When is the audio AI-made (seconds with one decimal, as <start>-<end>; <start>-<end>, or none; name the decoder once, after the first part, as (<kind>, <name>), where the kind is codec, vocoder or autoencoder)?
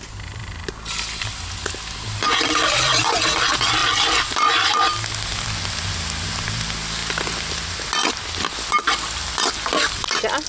none